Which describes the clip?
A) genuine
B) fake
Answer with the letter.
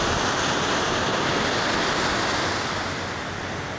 A